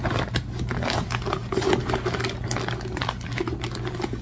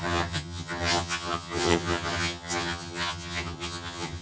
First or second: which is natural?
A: first